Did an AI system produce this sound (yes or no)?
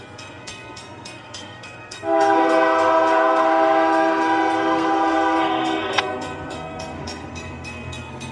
yes